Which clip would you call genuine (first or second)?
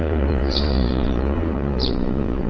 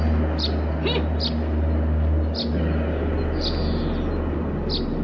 second